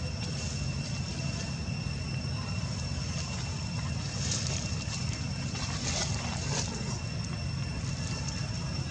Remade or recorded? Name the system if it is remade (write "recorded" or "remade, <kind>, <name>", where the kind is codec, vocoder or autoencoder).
recorded